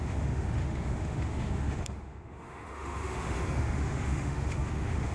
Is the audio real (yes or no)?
no